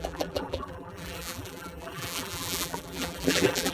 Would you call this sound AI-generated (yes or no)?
yes